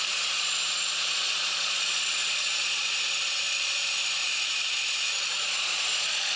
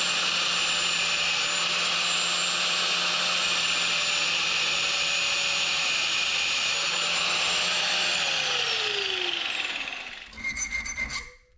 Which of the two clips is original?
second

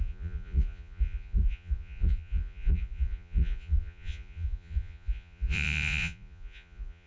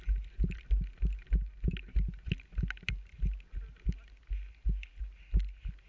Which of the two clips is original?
second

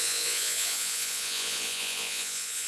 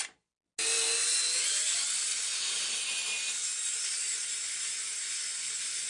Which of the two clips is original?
second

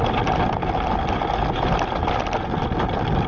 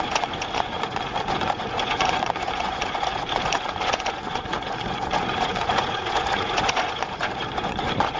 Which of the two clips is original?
first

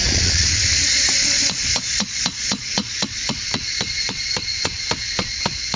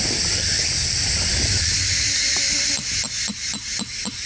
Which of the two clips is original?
second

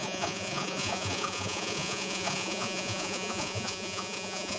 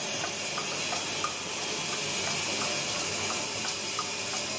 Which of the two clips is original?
second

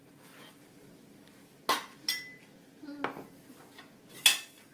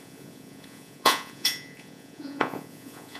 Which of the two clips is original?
first